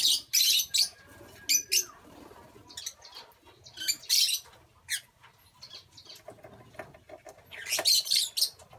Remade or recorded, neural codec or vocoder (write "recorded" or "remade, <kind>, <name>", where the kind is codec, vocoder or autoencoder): recorded